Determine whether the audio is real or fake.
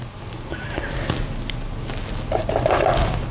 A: real